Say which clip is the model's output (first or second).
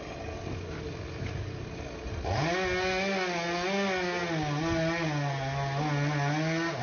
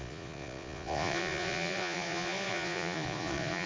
second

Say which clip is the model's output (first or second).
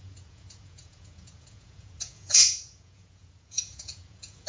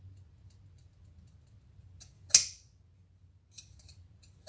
first